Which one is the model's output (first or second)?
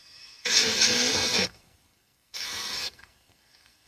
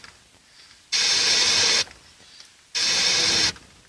first